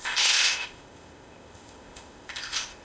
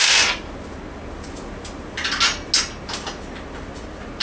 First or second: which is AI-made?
first